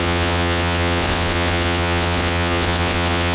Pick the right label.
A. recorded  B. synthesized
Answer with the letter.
B